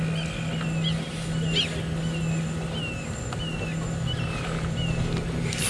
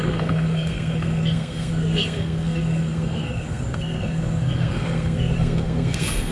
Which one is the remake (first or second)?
second